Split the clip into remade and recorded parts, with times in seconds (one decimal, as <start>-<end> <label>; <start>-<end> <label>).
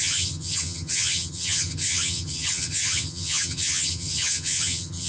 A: 0.0-5.1 remade